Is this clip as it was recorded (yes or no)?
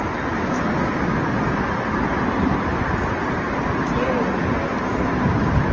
yes